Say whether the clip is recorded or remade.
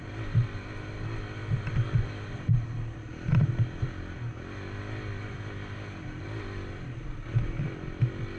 recorded